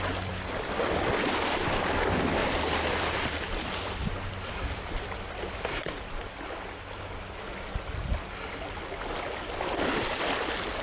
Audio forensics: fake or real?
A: real